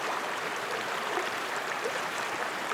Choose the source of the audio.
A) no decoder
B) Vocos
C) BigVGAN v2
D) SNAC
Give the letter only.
C